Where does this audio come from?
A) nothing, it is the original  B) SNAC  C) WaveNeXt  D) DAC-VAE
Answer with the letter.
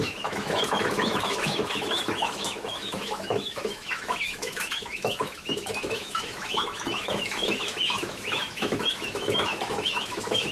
D